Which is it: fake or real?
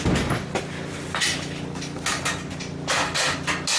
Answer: real